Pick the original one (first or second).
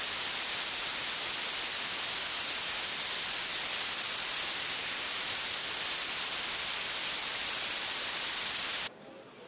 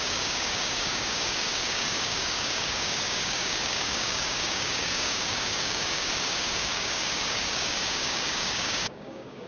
first